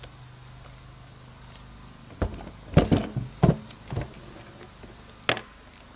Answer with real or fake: real